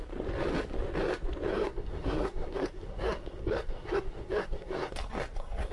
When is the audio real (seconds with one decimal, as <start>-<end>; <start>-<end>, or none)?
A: 0.0-1.5; 4.9-5.7